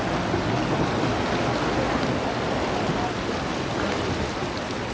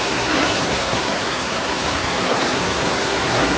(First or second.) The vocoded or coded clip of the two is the second